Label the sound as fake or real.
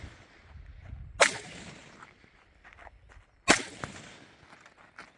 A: real